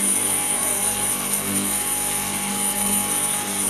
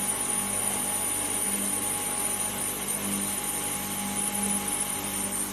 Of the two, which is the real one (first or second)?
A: second